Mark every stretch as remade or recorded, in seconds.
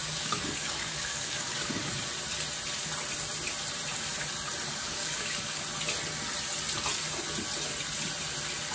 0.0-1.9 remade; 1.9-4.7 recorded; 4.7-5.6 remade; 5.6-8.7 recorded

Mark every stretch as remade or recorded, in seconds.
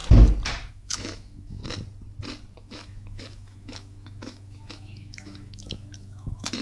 0.0-0.7 recorded; 0.7-1.6 remade; 1.6-2.6 recorded; 2.6-6.6 remade